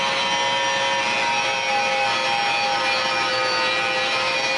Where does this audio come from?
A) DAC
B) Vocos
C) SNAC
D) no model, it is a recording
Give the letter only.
D